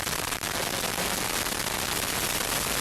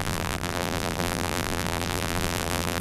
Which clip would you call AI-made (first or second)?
second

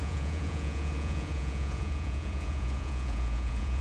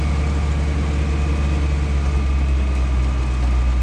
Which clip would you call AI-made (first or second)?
first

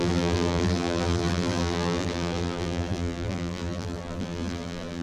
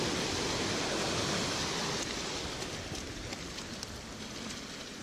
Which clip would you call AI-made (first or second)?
first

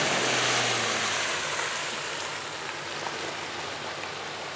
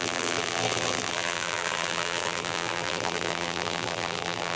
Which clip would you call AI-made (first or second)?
second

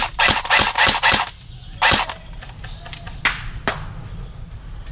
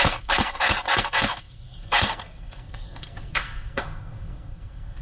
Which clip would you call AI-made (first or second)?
second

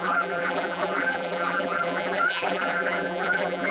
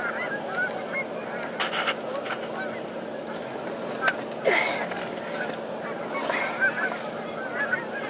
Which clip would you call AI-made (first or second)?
first